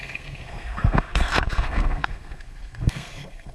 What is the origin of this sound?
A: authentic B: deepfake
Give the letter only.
B